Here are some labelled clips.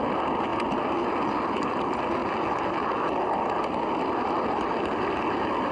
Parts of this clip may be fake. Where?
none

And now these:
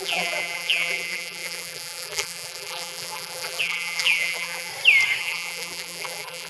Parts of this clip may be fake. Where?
0.0-4.7 (vocoder, BigVGAN v2); 5.2-6.5

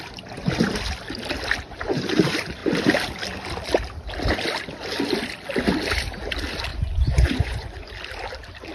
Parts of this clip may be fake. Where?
6.7-7.9 (vocoder, Vocos)